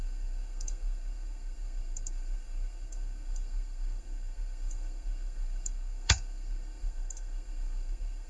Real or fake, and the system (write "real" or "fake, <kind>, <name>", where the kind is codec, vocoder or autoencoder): fake, codec, SNAC